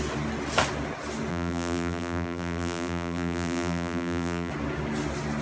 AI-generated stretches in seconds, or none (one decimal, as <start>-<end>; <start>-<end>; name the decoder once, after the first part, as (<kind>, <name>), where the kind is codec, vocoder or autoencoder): 1.3-4.5 (vocoder, BigVGAN v2)